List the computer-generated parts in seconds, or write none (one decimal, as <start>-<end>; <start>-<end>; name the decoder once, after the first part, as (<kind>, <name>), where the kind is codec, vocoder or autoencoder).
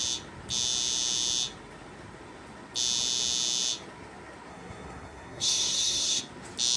4.5-6.2 (codec, SNAC)